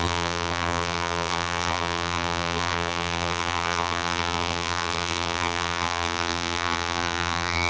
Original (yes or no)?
no